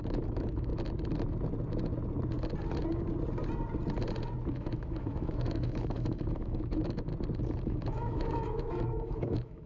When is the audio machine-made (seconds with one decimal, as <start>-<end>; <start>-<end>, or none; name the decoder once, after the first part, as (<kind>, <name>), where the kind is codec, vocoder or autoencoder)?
0.0-0.7 (autoencoder, DAC-VAE); 4.5-7.1; 7.6-9.7